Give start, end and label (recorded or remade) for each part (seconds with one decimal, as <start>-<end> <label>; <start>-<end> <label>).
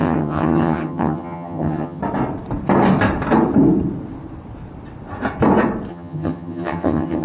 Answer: 0.0-2.0 remade; 2.0-5.9 recorded; 5.9-7.2 remade